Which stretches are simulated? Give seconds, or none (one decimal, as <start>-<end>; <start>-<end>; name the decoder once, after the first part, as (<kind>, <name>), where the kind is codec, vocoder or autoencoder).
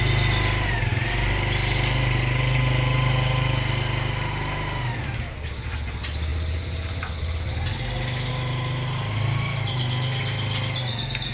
none